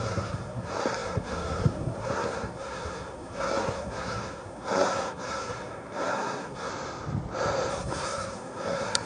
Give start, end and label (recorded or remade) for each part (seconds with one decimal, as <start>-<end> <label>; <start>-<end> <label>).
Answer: 0.0-6.7 remade; 6.7-7.7 recorded; 7.7-9.1 remade